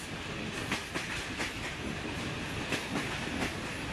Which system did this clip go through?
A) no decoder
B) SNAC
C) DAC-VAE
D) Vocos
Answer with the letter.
A